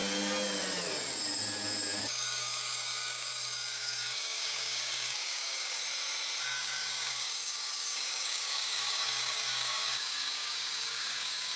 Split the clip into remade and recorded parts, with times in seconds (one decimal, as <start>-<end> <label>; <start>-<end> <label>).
0.0-2.0 recorded; 2.0-5.8 remade; 5.8-6.4 recorded; 6.4-11.6 remade